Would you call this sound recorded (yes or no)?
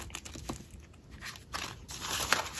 yes